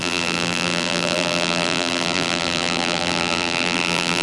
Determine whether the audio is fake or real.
fake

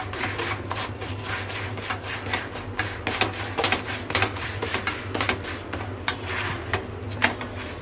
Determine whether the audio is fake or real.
real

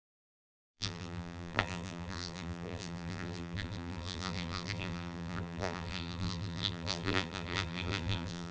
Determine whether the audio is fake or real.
fake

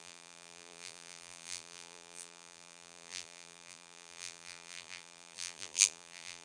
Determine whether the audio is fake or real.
fake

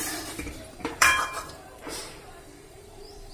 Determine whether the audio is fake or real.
fake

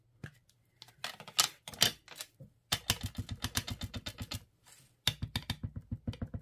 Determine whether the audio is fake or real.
real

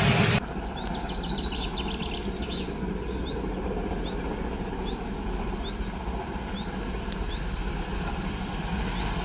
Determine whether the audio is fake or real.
real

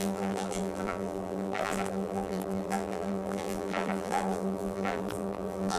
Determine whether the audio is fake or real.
fake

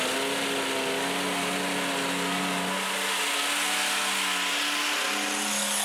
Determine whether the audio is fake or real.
real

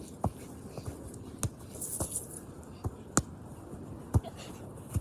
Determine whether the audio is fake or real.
real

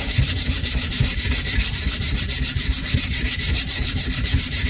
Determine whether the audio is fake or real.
fake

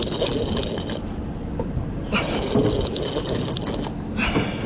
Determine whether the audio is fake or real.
real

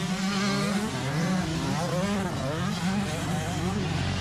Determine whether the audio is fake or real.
real